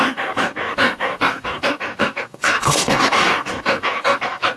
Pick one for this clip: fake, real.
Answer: fake